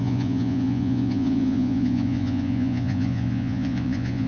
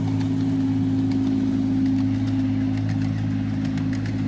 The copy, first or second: first